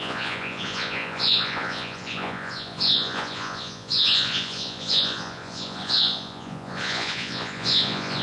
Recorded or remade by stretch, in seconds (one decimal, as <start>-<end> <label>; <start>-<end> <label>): 0.0-8.2 remade